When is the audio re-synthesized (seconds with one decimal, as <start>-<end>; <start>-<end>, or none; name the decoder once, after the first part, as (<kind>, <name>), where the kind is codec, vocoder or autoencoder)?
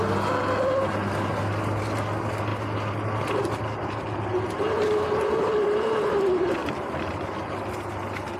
6.6-7.2 (vocoder, BigVGAN v2)